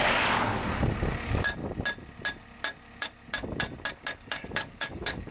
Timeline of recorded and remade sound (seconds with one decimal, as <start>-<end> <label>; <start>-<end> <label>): 0.0-0.6 remade; 0.6-1.1 recorded; 1.1-1.6 remade; 1.6-4.0 recorded; 4.0-5.3 remade